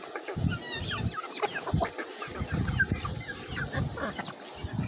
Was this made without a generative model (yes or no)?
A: yes